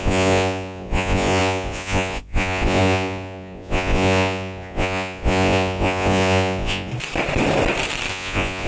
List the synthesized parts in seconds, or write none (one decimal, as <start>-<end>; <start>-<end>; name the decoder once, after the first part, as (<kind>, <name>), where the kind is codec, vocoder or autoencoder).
0.0-6.9 (vocoder, Vocos); 8.1-8.7